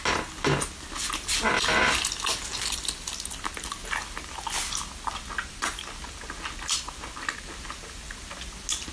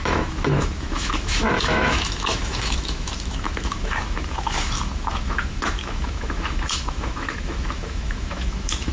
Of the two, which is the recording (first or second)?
first